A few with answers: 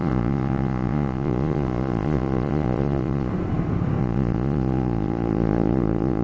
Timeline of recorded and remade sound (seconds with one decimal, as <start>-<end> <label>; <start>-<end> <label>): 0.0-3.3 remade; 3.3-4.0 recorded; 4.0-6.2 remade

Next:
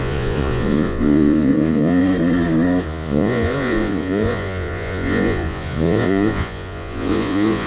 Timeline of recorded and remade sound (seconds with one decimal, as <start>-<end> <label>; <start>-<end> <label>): 0.0-2.0 remade; 2.0-2.8 recorded; 2.8-7.7 remade

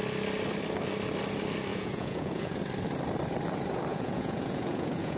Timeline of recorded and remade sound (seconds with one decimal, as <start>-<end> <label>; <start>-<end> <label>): 0.0-1.7 recorded; 1.7-2.6 remade; 2.6-3.9 recorded; 3.9-5.2 remade

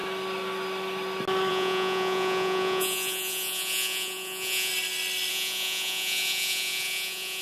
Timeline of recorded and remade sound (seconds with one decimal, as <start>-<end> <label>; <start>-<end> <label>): 0.0-1.5 recorded; 1.5-4.7 remade; 4.7-5.3 recorded; 5.3-7.4 remade

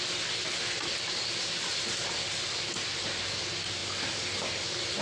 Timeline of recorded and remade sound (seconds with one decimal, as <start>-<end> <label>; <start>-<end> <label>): 0.0-5.0 recorded

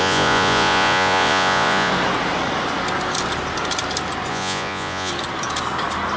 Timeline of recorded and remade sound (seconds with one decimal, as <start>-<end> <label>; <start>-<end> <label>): 0.0-1.9 remade; 1.9-4.3 recorded; 4.3-5.1 remade; 5.1-6.2 recorded

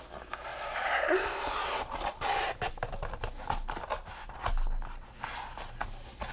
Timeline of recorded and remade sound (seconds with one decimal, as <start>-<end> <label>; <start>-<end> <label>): 0.0-6.3 recorded

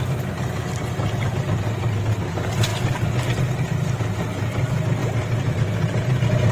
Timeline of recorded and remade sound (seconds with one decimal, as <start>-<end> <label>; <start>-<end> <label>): 0.0-6.5 recorded